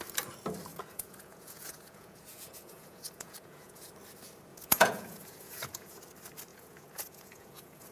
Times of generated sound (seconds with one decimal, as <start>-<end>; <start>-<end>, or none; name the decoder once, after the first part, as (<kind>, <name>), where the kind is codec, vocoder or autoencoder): 0.7-3.9 (vocoder, Vocos); 4.5-6.0; 6.5-7.9